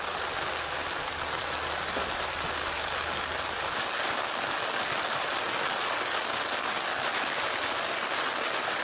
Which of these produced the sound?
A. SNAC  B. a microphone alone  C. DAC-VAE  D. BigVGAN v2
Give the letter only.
B